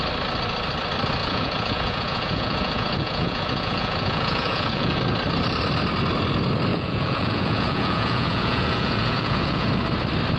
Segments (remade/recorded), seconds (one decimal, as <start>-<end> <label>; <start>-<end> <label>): 0.0-1.2 recorded; 1.2-5.0 remade; 5.0-6.7 recorded; 6.7-9.7 remade; 9.7-10.4 recorded